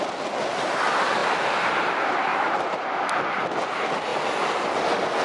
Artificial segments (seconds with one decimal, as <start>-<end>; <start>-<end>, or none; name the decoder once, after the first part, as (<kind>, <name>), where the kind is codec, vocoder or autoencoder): 1.2-1.7 (vocoder, BigVGAN v2); 2.3-3.1